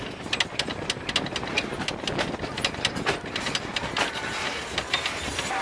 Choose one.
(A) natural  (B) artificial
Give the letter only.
A